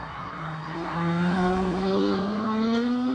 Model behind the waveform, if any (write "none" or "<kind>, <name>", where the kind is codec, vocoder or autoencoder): codec, SNAC